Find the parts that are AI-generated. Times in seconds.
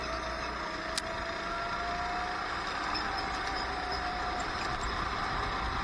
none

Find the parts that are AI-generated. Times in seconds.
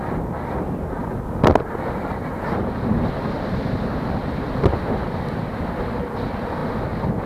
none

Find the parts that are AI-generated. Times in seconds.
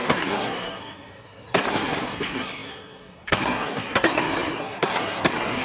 0.0-5.6